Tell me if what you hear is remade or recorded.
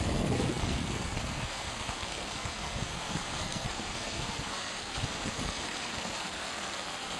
remade